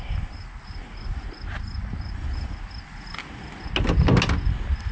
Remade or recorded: recorded